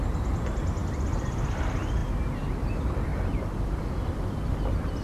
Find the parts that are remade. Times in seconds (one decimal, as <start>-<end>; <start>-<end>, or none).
none